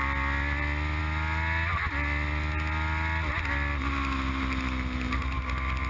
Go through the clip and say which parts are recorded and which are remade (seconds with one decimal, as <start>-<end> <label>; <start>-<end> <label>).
0.0-5.9 recorded